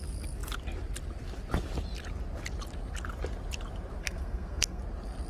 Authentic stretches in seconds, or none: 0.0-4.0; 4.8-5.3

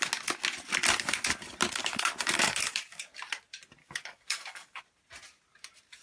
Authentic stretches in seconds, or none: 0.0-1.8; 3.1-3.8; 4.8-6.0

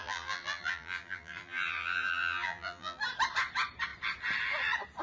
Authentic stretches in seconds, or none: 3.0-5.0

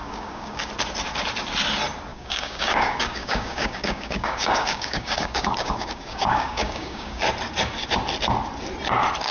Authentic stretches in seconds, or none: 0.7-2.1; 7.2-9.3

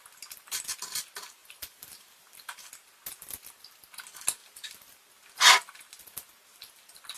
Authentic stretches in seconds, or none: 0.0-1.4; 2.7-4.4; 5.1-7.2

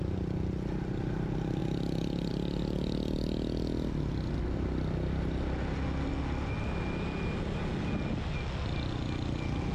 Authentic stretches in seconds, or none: 0.0-9.7

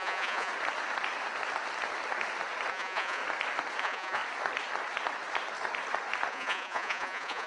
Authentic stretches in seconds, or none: 0.5-2.7; 3.2-3.8; 4.2-6.3